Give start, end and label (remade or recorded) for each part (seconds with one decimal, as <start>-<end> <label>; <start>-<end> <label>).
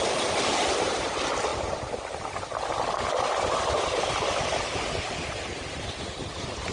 0.0-6.7 recorded